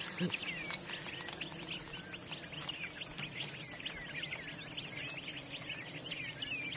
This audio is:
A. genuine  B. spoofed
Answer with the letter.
A